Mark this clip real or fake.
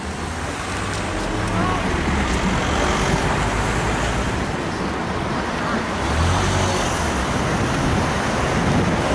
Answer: real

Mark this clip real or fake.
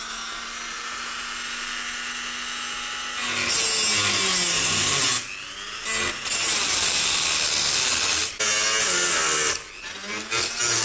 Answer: real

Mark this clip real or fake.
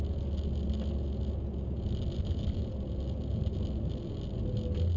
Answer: real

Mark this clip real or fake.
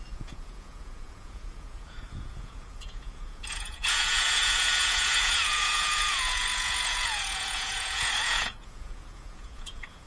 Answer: fake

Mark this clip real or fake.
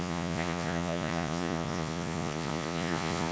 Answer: fake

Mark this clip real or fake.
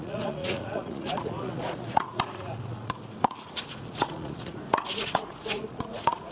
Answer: fake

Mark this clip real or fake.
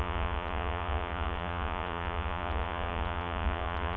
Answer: fake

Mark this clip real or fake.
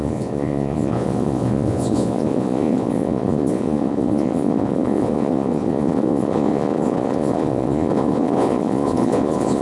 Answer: fake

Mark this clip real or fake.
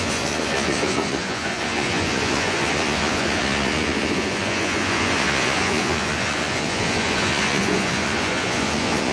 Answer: fake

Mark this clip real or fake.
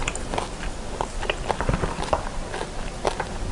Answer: real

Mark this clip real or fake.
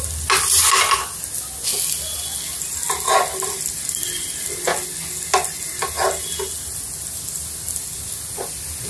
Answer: real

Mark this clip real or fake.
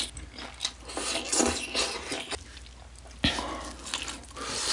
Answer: real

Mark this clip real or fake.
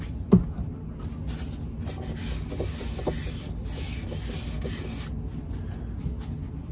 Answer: real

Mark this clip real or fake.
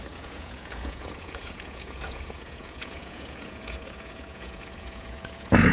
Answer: fake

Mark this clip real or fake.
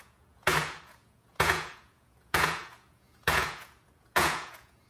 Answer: fake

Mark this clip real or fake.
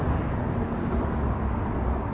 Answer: real